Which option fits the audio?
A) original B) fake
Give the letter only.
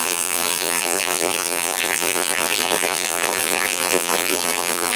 B